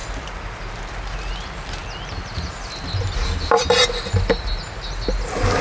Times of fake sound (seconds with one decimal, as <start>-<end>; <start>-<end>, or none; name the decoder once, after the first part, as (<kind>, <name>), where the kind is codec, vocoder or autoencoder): none